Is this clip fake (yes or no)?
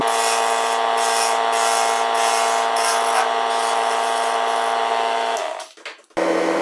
no